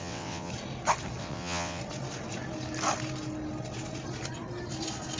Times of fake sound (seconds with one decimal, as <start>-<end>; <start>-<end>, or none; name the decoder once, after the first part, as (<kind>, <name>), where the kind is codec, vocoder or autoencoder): 0.0-0.5 (vocoder, WaveNeXt); 1.2-1.8